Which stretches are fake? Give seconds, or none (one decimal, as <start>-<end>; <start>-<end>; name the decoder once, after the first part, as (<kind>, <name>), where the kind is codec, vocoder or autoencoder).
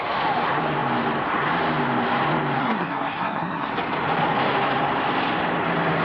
2.6-3.7 (codec, SNAC)